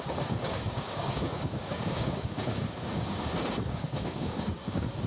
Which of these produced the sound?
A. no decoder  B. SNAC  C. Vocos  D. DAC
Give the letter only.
D